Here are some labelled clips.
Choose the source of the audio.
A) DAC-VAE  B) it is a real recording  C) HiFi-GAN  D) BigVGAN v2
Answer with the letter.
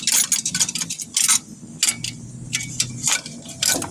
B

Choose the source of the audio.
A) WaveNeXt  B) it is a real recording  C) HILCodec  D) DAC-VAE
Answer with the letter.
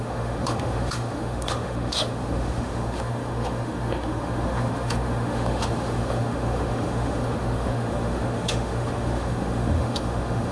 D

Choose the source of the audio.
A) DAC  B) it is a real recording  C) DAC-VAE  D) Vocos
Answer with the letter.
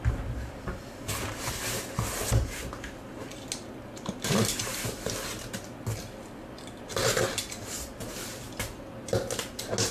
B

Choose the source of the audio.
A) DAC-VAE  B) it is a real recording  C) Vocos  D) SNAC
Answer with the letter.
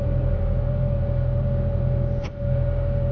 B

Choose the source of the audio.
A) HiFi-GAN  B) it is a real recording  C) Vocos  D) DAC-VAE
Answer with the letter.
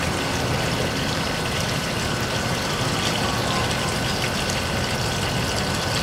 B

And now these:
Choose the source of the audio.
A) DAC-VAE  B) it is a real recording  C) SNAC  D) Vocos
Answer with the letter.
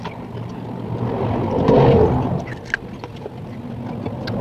B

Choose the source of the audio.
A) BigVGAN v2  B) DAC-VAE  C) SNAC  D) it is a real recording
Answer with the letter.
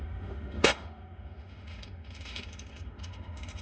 B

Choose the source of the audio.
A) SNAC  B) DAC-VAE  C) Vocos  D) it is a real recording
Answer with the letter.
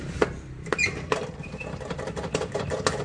D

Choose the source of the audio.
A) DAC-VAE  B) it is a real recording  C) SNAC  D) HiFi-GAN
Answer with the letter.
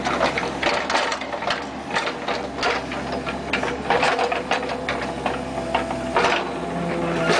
B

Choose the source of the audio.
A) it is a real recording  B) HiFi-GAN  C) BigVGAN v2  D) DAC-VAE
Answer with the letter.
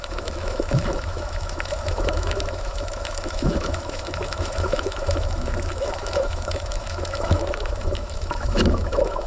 D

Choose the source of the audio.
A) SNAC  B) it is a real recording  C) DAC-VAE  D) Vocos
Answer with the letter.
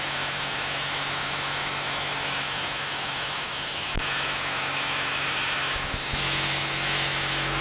C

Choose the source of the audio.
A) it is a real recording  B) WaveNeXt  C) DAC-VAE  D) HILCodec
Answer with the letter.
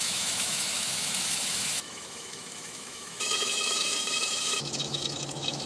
C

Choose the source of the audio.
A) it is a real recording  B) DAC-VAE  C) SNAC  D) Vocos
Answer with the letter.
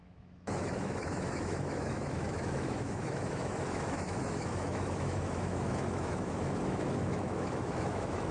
B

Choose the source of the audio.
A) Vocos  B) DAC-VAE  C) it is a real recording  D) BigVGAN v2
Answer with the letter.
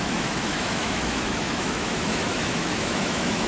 B